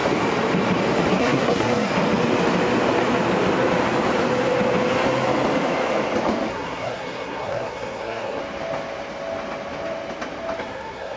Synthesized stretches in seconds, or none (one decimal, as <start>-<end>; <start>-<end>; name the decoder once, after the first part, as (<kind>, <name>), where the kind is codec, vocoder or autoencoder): 1.1-1.9 (codec, SNAC); 6.5-8.4; 10.6-11.2